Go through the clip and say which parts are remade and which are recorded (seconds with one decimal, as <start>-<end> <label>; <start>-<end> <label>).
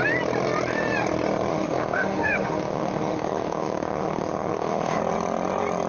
0.0-1.5 recorded; 1.5-5.0 remade; 5.0-5.9 recorded